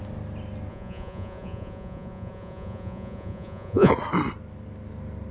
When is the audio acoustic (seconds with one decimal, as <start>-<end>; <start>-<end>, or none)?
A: 0.0-0.7; 3.9-5.3